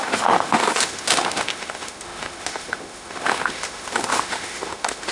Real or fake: fake